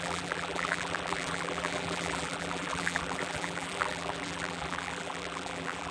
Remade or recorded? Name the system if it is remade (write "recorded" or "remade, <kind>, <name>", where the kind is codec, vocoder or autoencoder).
remade, vocoder, BigVGAN v2